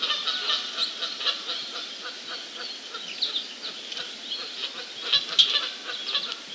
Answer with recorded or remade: recorded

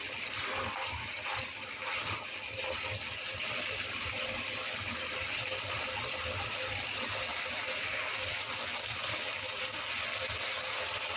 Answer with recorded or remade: recorded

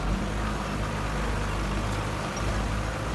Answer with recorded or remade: recorded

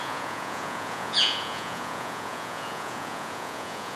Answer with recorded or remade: remade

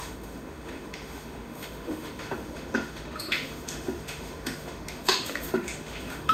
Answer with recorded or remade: remade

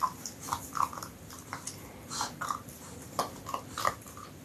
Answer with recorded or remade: recorded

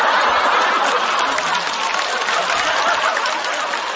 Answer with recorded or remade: recorded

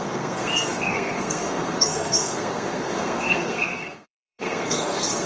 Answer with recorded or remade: remade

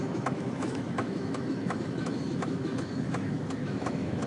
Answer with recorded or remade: remade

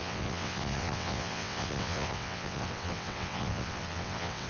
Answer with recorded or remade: remade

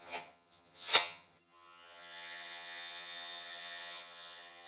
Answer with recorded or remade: remade